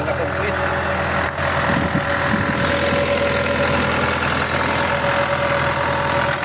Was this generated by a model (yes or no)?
no